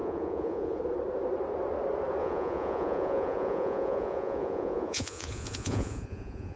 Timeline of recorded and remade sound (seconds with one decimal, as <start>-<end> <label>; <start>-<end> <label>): 0.0-0.8 remade; 0.8-2.2 recorded; 2.2-6.6 remade